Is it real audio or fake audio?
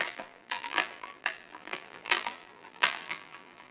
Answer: fake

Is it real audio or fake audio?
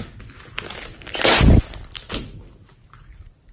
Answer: real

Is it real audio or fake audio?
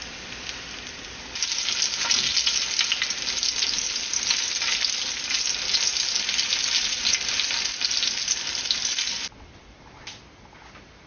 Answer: real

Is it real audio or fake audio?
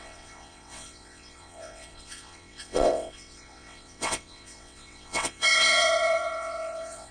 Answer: fake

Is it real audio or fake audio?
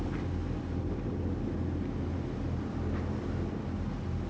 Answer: real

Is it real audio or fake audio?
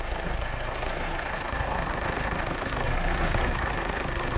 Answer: fake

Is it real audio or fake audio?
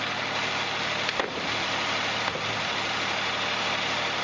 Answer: real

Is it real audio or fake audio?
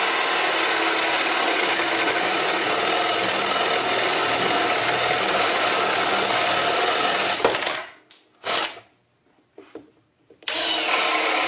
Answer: real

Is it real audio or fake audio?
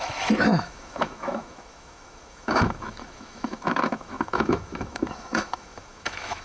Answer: fake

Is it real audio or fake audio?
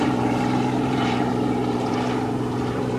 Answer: fake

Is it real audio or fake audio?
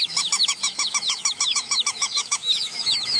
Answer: fake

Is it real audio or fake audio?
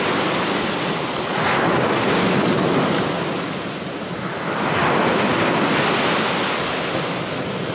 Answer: real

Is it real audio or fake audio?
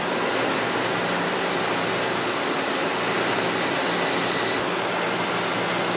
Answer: real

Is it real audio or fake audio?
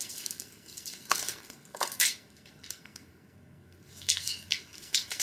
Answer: fake